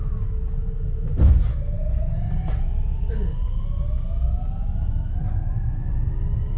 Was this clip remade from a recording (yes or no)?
no